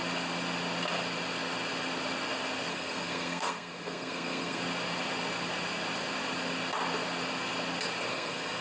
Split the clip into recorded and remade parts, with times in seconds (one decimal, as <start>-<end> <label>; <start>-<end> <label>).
0.0-2.7 recorded; 2.7-4.6 remade; 4.6-8.1 recorded; 8.1-8.6 remade